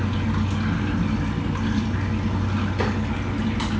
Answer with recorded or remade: recorded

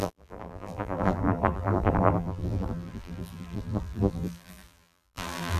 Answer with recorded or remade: remade